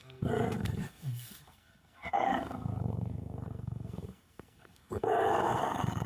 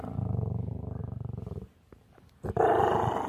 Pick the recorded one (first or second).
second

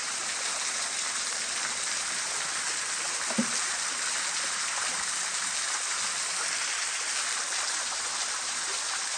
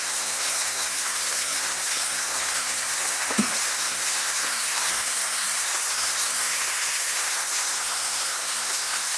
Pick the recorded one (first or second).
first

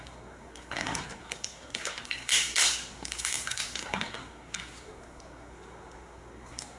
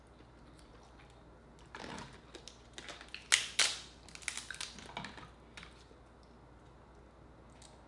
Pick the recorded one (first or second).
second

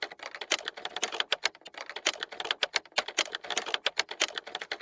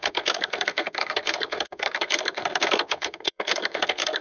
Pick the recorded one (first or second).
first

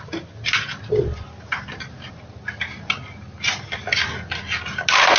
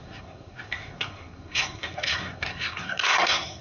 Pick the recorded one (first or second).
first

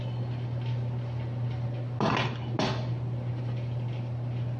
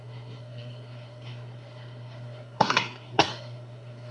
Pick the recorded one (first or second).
first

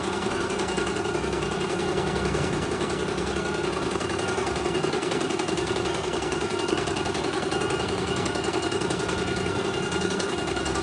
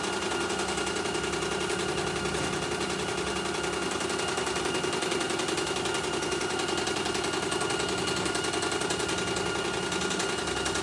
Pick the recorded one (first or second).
second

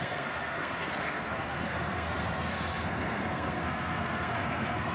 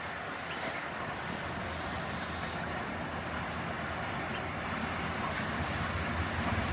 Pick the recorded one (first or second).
second